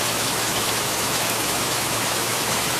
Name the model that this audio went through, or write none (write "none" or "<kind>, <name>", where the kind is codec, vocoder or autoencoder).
autoencoder, DAC-VAE